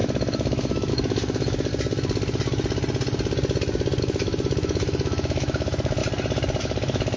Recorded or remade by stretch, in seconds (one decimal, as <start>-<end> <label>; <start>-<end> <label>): 0.0-1.7 remade; 1.7-4.0 recorded; 4.0-6.0 remade; 6.0-6.6 recorded; 6.6-7.2 remade